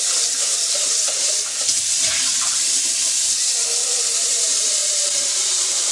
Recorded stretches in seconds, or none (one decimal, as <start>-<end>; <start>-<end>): 0.0-1.0; 3.3-4.8